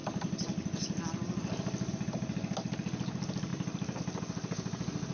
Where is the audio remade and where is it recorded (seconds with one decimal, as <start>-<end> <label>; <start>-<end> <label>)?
0.0-3.5 recorded; 3.5-4.0 remade; 4.0-5.1 recorded

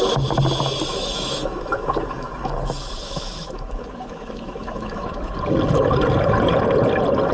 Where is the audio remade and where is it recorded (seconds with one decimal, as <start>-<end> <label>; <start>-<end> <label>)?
0.0-0.9 recorded; 0.9-5.3 remade; 5.3-7.3 recorded